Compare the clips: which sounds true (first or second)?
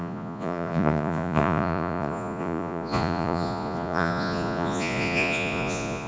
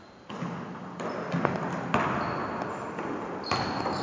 second